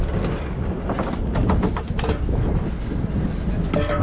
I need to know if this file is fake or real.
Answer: real